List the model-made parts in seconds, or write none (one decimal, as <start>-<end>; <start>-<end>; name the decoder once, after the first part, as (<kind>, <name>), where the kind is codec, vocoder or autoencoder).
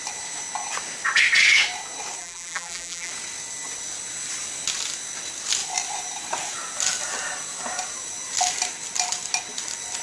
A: 2.2-3.1 (vocoder, BigVGAN v2)